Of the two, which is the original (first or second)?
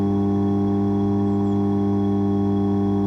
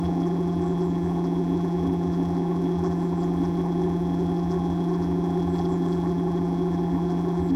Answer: first